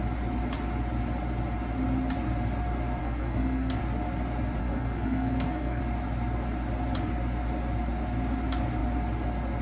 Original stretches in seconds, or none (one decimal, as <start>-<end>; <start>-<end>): 0.0-3.0; 3.8-4.6; 5.8-9.6